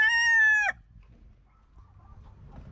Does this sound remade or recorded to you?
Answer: recorded